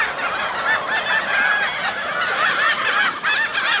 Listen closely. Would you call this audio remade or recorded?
recorded